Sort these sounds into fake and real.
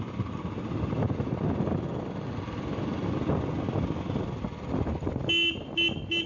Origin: real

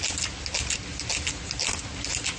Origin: real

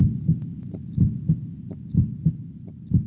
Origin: real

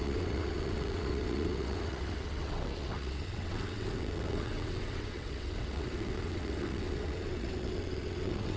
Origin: fake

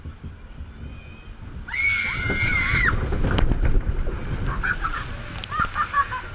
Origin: real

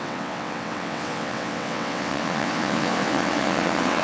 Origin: fake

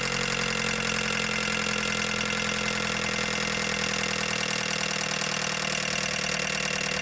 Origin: real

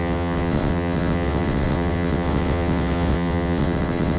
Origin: fake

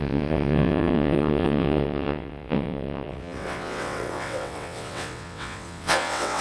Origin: fake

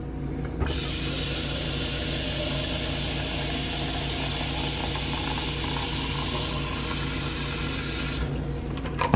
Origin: real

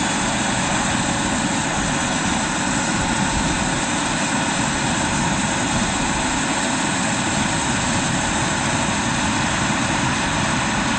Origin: real